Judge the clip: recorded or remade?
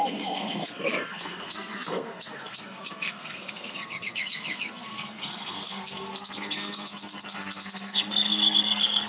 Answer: remade